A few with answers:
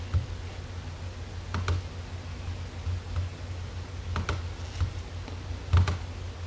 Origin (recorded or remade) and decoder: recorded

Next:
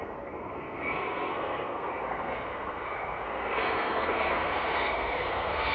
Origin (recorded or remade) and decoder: remade, codec, SNAC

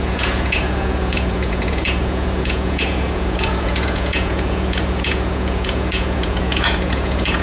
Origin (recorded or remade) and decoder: remade, vocoder, Vocos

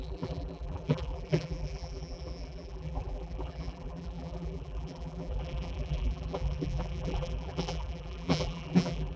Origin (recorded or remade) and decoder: remade, vocoder, BigVGAN v2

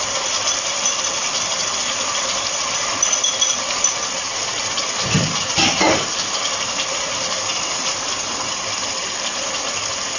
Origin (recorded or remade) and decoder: recorded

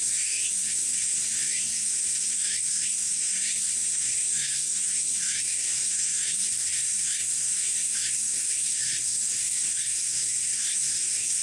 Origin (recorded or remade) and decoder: remade, codec, SNAC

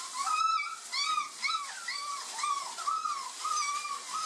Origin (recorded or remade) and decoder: recorded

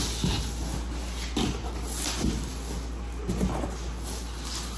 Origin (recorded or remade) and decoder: recorded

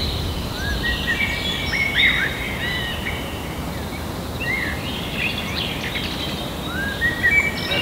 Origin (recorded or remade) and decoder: recorded